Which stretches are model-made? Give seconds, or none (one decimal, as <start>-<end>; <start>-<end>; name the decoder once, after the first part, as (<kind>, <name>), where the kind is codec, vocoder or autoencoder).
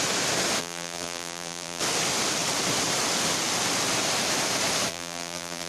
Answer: 0.6-1.8 (vocoder, BigVGAN v2); 4.9-5.7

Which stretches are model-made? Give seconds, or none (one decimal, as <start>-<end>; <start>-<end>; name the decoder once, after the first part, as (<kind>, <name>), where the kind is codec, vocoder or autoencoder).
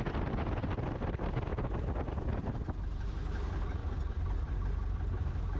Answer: none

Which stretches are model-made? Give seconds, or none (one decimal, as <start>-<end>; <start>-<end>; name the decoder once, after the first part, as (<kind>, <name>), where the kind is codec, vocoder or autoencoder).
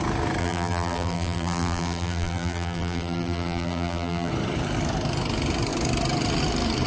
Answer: 0.4-4.3 (vocoder, BigVGAN v2)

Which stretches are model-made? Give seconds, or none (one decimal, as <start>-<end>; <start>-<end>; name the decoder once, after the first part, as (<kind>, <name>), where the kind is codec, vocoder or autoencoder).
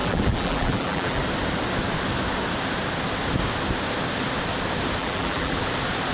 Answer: 0.0-1.2 (vocoder, BigVGAN v2); 5.0-5.6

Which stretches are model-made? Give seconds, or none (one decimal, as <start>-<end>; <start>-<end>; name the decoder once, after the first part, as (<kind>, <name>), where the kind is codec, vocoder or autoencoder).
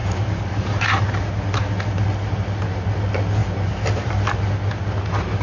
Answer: 0.0-1.0 (vocoder, BigVGAN v2); 3.4-4.1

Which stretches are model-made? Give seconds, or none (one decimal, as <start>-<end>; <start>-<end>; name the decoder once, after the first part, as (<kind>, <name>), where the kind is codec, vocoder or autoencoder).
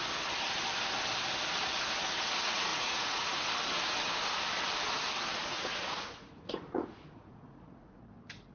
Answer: 2.7-3.5 (vocoder, Vocos); 5.5-8.0